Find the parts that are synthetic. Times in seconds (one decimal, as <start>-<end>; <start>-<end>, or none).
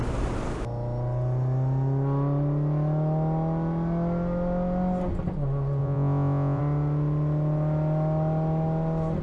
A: 5.8-6.6